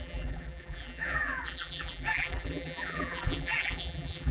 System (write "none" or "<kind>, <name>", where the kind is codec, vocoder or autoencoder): vocoder, BigVGAN v2